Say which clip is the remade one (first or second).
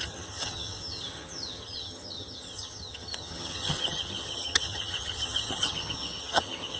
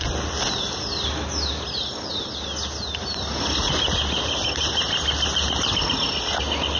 first